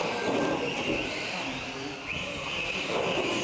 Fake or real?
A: real